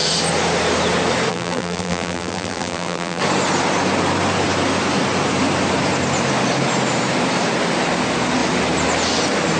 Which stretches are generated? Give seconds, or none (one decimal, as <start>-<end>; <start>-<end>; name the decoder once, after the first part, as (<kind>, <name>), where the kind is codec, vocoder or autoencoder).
1.3-3.2 (vocoder, BigVGAN v2)